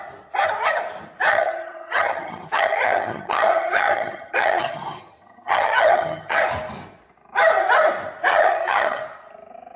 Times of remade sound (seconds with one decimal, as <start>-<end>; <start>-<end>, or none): 1.3-6.4; 8.3-9.0